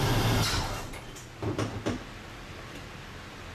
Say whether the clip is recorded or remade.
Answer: recorded